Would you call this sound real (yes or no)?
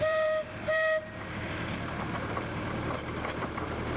no